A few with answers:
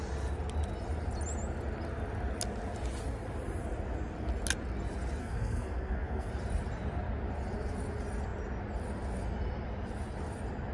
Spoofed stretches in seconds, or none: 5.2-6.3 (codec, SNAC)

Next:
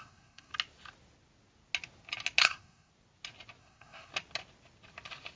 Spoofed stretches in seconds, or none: 0.0-0.5 (codec, SNAC); 2.4-2.9; 3.6-4.1

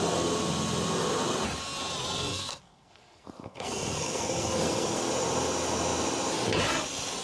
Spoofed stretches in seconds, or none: 2.3-5.1 (codec, SNAC)

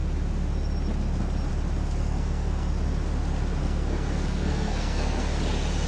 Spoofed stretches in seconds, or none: 2.0-2.7 (codec, SNAC); 3.6-5.4

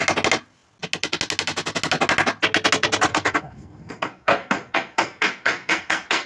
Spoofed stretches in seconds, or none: 3.1-6.3 (codec, SNAC)